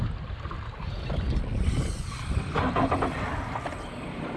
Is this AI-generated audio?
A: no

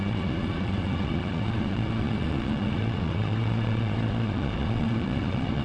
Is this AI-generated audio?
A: yes